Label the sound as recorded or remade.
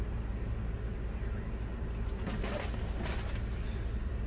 recorded